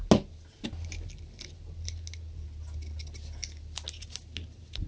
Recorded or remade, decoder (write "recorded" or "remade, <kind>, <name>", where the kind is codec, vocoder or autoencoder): recorded